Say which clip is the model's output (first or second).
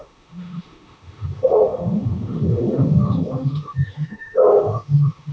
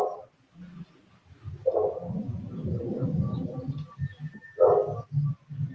first